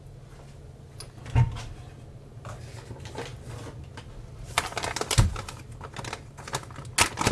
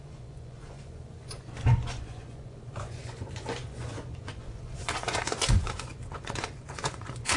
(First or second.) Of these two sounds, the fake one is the second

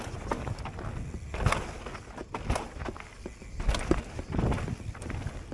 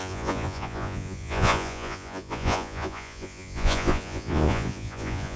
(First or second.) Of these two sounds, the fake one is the second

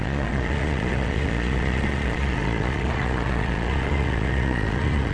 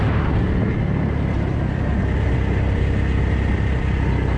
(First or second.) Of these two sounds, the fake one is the first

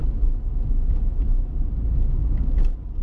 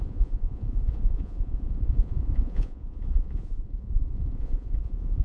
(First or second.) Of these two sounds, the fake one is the second